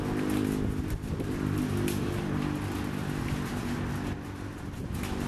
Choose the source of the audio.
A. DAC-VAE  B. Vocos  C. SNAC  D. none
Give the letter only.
D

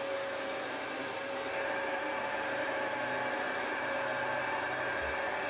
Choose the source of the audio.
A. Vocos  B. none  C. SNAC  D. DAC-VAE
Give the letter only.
B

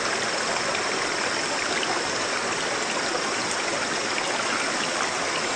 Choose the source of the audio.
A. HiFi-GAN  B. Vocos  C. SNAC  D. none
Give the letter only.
D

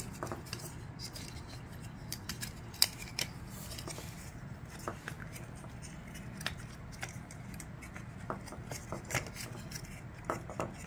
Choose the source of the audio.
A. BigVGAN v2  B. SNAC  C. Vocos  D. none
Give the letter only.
D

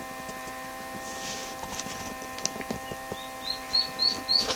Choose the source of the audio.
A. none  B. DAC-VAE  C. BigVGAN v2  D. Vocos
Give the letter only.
A